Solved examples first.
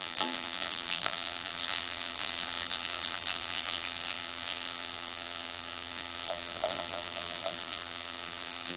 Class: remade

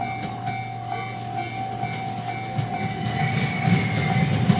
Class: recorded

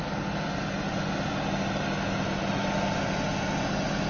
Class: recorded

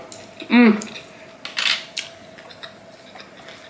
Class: recorded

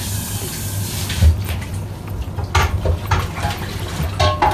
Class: recorded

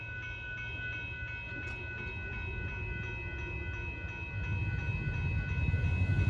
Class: recorded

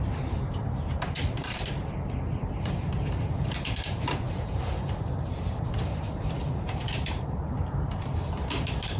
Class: remade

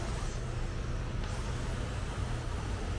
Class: recorded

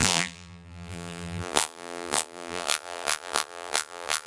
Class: remade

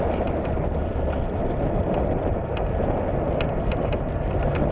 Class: recorded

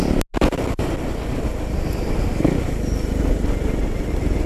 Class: recorded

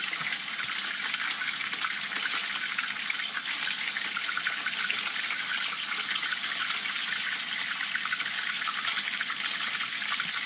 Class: recorded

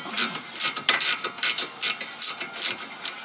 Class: recorded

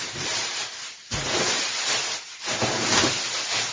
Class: remade